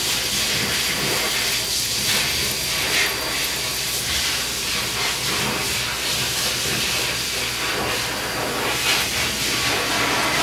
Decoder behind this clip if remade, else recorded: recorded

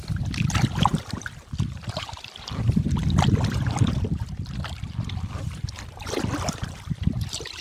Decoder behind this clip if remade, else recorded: recorded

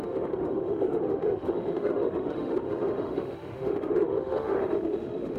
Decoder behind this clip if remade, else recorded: remade, autoencoder, DAC-VAE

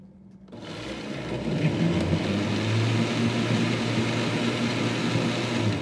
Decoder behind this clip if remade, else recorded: recorded